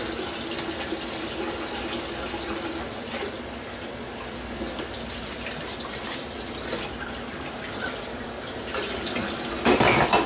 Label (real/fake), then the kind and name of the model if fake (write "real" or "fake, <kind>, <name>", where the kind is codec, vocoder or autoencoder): real